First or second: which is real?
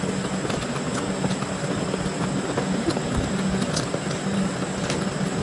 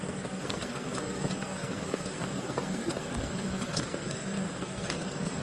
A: first